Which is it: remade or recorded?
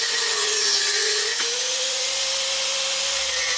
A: remade